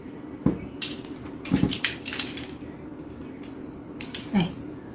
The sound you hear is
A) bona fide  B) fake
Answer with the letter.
A